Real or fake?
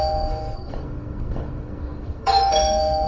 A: fake